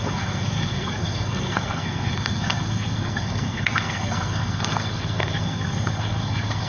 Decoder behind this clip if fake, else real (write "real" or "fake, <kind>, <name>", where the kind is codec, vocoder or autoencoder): fake, codec, SNAC